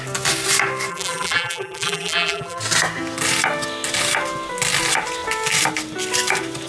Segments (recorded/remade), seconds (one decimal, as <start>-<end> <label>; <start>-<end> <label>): 0.0-0.9 recorded; 0.9-2.6 remade; 2.6-6.7 recorded